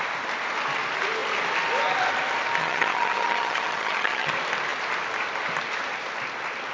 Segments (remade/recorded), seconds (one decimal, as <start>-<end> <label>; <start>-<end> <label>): 0.0-2.6 recorded; 2.6-4.3 remade; 4.3-6.7 recorded